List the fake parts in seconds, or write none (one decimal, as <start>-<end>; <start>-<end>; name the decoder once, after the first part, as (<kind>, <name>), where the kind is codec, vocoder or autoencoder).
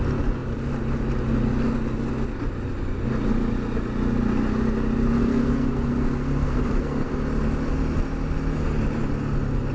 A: 5.2-7.1 (codec, SNAC)